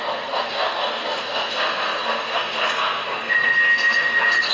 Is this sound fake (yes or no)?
yes